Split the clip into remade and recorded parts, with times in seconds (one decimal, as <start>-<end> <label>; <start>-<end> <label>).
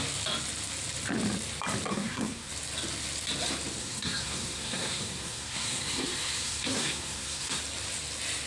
0.0-1.9 recorded; 1.9-2.5 remade; 2.5-3.8 recorded; 3.8-7.6 remade; 7.6-8.5 recorded